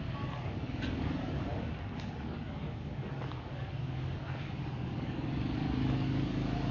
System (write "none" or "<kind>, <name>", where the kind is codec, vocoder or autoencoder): codec, DAC